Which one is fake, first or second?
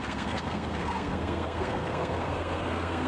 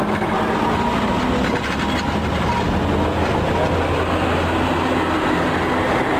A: first